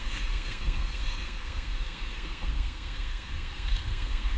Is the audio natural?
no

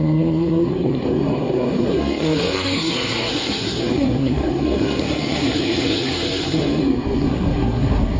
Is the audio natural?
no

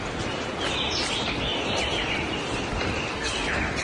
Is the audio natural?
yes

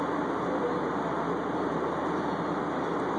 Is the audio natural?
yes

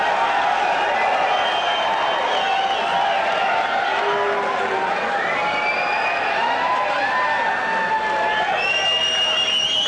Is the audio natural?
yes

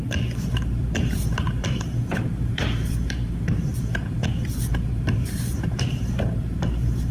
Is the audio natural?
no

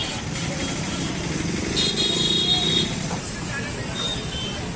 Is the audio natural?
yes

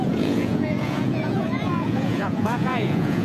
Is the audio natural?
no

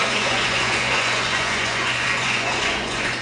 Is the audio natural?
no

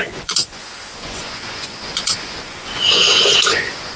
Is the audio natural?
no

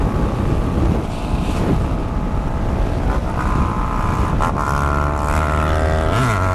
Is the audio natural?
yes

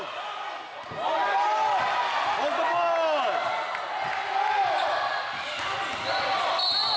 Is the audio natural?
yes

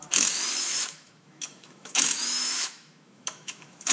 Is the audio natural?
no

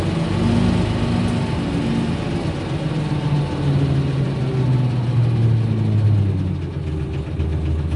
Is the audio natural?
yes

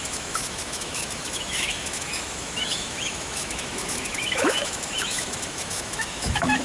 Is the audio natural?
no